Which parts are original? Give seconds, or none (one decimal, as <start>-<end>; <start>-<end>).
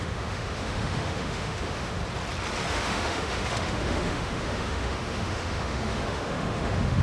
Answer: 2.0-2.7